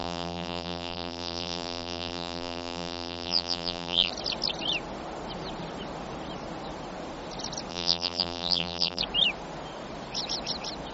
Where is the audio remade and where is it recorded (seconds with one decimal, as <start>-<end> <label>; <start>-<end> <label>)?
0.0-4.1 remade; 4.1-7.7 recorded; 7.7-9.0 remade; 9.0-10.9 recorded